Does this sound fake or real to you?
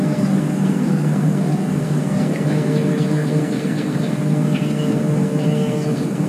fake